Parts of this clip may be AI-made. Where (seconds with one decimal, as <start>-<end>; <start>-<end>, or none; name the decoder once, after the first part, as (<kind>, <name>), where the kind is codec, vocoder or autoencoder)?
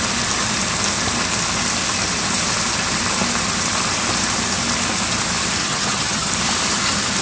5.6-6.3 (vocoder, HiFi-GAN)